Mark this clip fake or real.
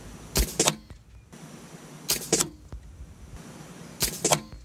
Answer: real